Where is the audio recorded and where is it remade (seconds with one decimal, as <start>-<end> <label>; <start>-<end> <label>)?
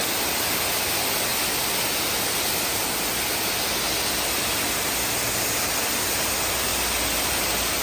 0.0-1.3 remade; 1.3-6.0 recorded; 6.0-6.7 remade; 6.7-7.3 recorded; 7.3-7.8 remade